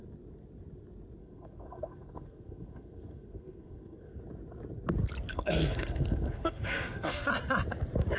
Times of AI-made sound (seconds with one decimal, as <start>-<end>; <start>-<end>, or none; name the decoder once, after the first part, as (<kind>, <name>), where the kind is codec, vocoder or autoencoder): 1.2-4.2 (codec, SNAC); 5.3-7.3